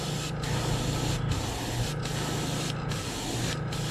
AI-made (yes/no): no